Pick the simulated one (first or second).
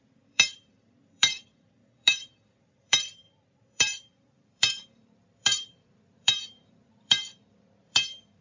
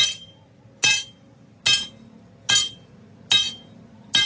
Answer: first